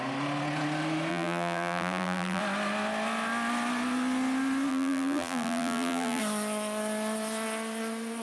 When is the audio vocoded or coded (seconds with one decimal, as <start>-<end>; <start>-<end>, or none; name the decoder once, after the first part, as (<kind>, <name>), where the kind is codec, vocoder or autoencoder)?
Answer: 1.1-2.4 (vocoder, BigVGAN v2); 4.7-6.2